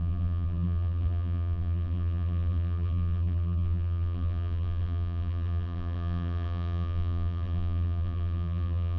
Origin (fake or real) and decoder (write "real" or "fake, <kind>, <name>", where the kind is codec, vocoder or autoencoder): fake, vocoder, BigVGAN v2